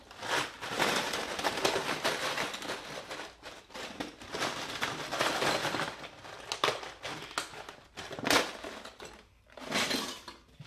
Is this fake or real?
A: real